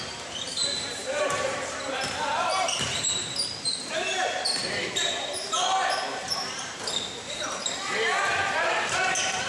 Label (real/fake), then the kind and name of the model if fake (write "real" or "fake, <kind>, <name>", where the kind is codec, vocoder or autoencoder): fake, vocoder, BigVGAN v2